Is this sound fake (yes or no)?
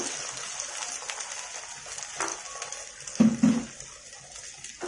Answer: no